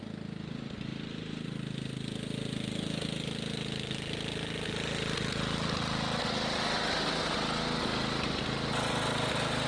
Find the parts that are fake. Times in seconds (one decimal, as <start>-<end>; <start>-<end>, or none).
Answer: none